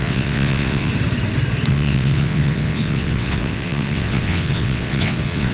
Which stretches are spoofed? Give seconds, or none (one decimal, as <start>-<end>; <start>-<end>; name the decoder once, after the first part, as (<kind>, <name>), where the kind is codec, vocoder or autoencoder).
0.0-0.9 (vocoder, WaveNeXt); 1.7-5.5